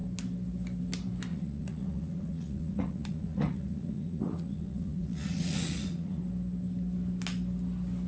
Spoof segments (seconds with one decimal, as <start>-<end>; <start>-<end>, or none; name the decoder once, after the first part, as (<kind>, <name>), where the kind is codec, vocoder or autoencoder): 1.3-6.2 (vocoder, Vocos)